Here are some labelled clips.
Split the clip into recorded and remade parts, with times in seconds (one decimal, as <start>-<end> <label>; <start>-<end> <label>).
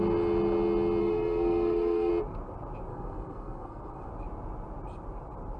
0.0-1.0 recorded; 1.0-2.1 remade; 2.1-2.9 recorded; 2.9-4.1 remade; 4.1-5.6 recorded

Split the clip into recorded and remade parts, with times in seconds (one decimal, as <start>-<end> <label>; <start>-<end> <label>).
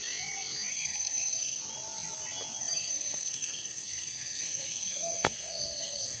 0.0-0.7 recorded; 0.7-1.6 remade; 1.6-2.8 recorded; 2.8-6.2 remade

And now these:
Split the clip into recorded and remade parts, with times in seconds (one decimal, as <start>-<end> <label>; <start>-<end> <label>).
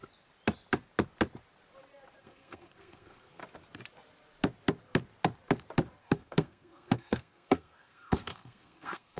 0.0-2.2 recorded; 2.2-3.4 remade; 3.4-6.0 recorded; 6.0-9.2 remade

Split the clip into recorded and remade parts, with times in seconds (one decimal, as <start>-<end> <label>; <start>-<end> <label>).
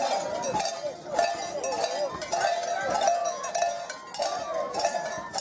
0.0-5.4 recorded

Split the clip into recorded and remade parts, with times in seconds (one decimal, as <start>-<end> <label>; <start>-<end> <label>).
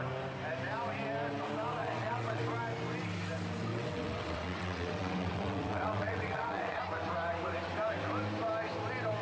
0.0-1.8 recorded; 1.8-2.4 remade; 2.4-3.7 recorded; 3.7-6.8 remade; 6.8-9.2 recorded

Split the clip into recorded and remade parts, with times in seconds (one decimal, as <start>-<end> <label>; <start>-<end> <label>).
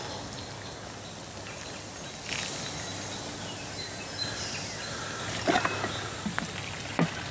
0.0-7.3 recorded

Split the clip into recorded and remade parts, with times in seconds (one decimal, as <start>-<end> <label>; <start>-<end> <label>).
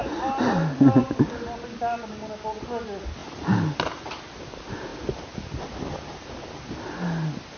0.0-7.6 recorded